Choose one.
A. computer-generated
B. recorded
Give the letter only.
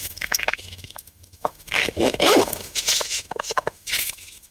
A